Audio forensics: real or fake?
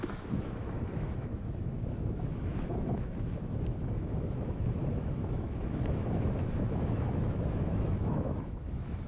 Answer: fake